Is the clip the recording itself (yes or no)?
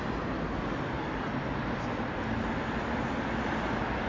yes